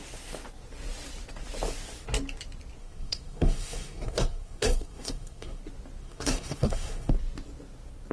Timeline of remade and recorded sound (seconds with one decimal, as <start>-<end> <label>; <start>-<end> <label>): 0.0-2.8 recorded; 2.8-5.6 remade; 5.6-6.0 recorded; 6.0-7.1 remade; 7.1-8.1 recorded